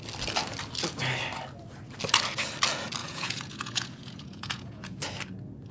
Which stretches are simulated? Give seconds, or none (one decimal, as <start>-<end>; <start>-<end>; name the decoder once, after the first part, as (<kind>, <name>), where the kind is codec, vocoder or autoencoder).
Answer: 3.0-5.0 (vocoder, Vocos)